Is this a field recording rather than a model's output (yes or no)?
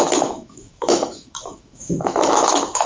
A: no